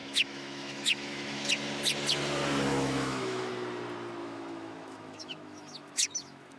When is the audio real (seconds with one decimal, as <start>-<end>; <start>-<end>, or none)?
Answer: 1.5-2.7; 3.5-4.2